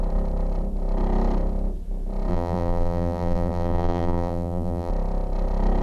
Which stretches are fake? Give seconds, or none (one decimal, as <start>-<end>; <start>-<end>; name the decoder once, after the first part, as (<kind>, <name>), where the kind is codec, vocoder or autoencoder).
2.3-4.9 (vocoder, BigVGAN v2)